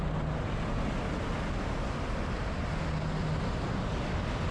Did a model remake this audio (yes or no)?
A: no